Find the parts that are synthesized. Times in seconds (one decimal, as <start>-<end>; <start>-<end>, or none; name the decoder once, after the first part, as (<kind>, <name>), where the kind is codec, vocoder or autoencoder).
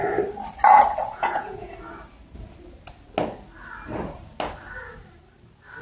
1.0-1.7 (vocoder, Vocos)